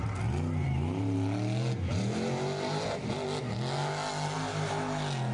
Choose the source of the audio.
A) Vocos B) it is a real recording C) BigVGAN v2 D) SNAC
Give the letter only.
B